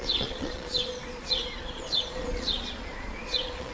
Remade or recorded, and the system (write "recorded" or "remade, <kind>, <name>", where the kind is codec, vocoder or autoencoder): remade, vocoder, Vocos